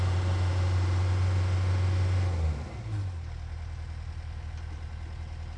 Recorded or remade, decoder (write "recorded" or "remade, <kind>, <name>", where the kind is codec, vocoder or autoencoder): recorded